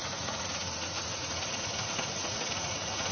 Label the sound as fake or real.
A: fake